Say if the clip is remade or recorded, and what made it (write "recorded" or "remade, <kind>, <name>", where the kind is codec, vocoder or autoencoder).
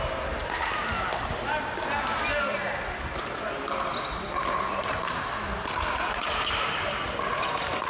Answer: recorded